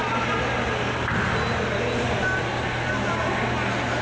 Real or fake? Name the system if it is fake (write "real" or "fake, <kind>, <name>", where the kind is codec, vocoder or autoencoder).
real